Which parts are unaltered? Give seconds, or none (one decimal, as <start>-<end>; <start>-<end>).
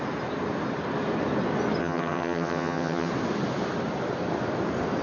0.0-1.8; 3.1-5.0